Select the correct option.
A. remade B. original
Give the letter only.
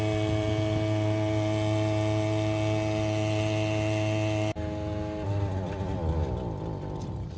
B